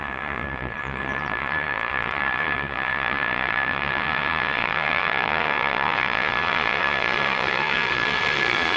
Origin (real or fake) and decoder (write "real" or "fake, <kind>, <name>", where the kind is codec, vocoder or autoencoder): fake, vocoder, Vocos